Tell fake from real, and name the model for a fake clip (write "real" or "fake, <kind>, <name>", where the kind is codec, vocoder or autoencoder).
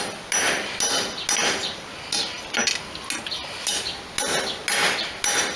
real